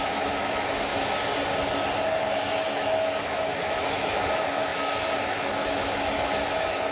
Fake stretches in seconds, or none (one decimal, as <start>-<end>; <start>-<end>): 0.0-0.9; 2.4-6.9